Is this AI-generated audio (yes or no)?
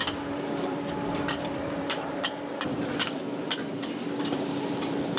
yes